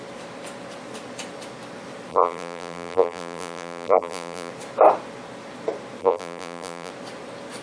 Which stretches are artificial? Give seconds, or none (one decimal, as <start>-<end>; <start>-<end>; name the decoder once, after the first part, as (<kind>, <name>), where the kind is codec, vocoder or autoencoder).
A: 2.1-4.5 (vocoder, BigVGAN v2); 6.0-6.9

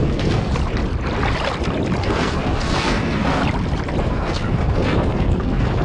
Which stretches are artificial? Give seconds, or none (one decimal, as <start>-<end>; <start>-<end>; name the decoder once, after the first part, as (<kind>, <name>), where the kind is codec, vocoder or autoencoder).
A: 0.0-0.5 (codec, SNAC); 2.0-3.4; 4.0-5.8